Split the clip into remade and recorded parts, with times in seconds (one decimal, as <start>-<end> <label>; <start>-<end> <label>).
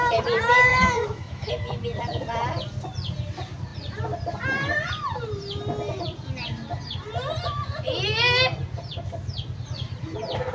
0.0-0.7 recorded; 0.7-1.5 remade; 1.5-10.5 recorded